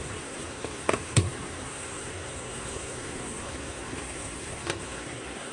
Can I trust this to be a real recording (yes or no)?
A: no